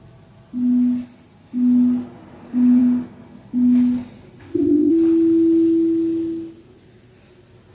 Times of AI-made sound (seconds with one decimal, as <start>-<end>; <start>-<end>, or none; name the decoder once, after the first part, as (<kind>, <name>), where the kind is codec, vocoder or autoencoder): 4.4-4.9 (codec, ZipCodec)